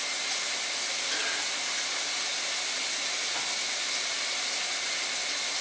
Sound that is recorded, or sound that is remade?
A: recorded